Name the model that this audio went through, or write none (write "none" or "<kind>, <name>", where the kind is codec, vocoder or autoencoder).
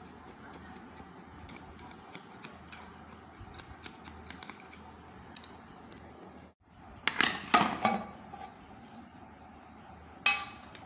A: none